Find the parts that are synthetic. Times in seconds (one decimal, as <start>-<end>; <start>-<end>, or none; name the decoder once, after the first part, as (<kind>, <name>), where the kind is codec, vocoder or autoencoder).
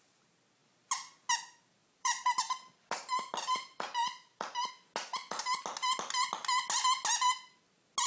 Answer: 1.8-2.4 (vocoder, BigVGAN v2); 4.0-4.7